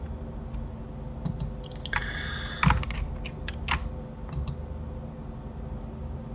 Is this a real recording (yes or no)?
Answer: yes